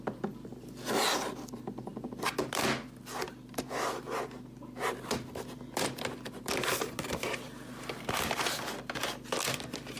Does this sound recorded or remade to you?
recorded